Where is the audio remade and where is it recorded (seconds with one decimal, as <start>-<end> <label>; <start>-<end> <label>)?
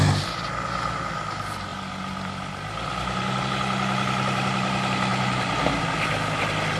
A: 0.0-1.7 recorded; 1.7-3.4 remade; 3.4-6.8 recorded